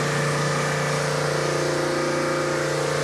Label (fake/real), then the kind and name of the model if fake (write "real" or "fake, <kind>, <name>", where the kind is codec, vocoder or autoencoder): real